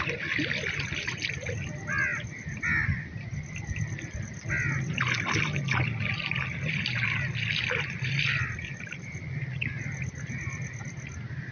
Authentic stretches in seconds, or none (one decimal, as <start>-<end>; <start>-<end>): 0.0-11.5